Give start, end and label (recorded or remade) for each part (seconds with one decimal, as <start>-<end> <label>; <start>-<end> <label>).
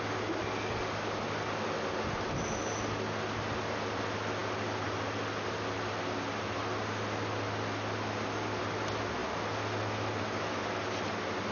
0.0-11.5 recorded